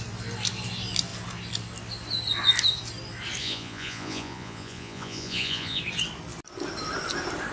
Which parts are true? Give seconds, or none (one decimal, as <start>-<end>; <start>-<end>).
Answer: 0.0-3.4; 5.8-7.5